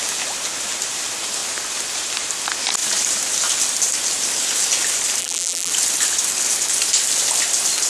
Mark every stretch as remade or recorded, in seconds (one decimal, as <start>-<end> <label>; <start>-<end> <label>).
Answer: 0.0-5.2 recorded; 5.2-5.7 remade; 5.7-7.9 recorded